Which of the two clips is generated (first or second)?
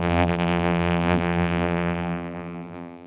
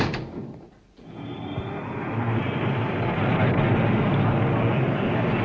first